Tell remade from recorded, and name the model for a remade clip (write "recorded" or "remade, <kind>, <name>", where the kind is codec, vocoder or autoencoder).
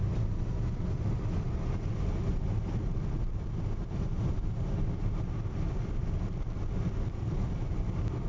recorded